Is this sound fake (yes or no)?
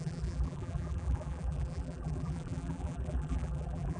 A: yes